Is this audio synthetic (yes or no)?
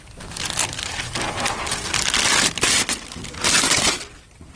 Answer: no